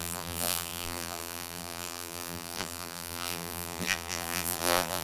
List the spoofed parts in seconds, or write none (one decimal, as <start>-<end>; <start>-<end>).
0.0-5.0